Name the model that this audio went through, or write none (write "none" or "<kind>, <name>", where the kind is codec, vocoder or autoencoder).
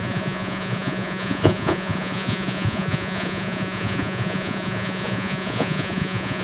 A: vocoder, Vocos